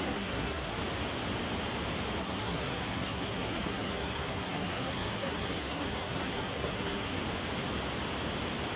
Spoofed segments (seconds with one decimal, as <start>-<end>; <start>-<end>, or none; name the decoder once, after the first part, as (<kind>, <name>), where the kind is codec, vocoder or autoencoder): 0.0-0.8 (codec, SNAC); 2.2-7.2